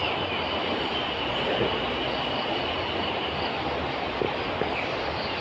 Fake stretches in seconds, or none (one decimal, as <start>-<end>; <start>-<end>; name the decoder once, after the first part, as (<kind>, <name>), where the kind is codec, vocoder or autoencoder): none